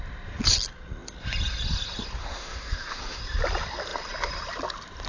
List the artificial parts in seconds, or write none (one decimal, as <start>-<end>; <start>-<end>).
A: 2.2-3.2